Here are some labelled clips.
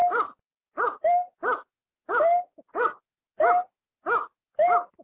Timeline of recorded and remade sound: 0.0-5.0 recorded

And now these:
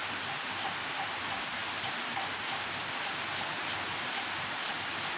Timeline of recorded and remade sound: 0.0-5.2 recorded

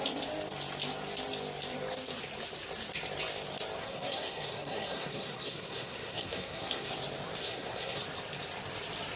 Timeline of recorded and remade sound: 0.0-3.8 recorded; 3.8-6.9 remade; 6.9-7.4 recorded; 7.4-8.0 remade; 8.0-9.2 recorded

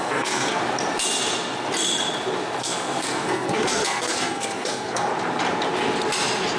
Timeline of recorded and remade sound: 0.0-0.6 remade; 0.6-2.6 recorded; 2.6-5.1 remade; 5.1-6.6 recorded

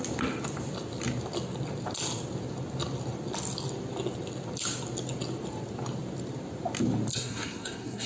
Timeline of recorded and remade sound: 0.0-7.1 recorded; 7.1-8.1 remade

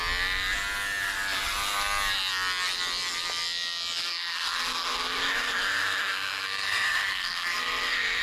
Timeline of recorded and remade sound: 0.0-4.0 recorded; 4.0-8.2 remade